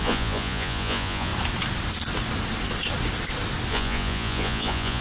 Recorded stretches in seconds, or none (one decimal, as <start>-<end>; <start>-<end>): 1.3-3.7